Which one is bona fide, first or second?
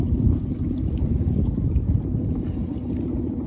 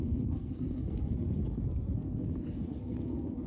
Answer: first